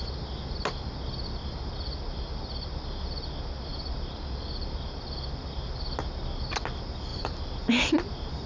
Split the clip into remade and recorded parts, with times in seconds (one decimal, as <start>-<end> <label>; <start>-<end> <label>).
0.0-3.7 recorded; 3.7-4.8 remade; 4.8-7.1 recorded; 7.1-7.6 remade; 7.6-8.5 recorded